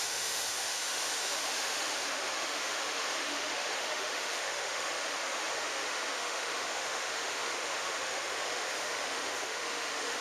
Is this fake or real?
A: fake